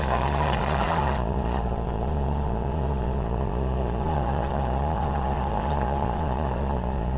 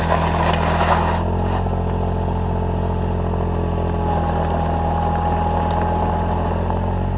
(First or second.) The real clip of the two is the second